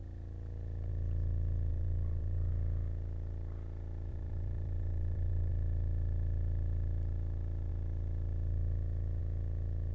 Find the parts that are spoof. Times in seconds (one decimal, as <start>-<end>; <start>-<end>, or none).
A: 1.7-2.5; 4.1-5.5